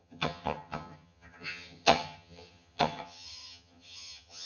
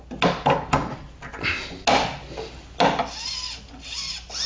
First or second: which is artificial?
first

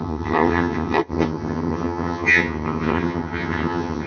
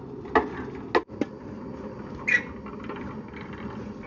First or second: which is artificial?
first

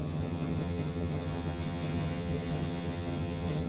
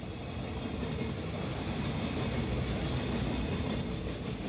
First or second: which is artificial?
first